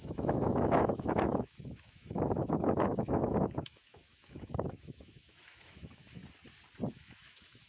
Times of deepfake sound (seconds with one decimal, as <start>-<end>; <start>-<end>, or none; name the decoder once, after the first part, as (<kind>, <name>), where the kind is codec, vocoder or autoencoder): 0.0-6.2 (autoencoder, DAC-VAE); 6.9-7.7